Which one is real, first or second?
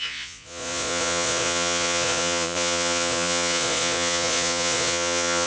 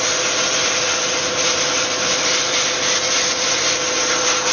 second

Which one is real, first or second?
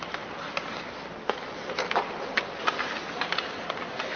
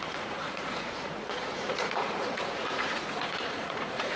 first